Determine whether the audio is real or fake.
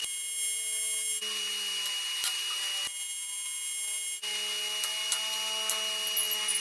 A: real